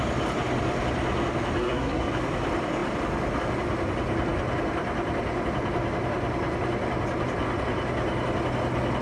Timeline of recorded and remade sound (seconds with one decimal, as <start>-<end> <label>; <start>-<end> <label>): 0.0-1.6 recorded; 1.6-2.1 remade; 2.1-9.0 recorded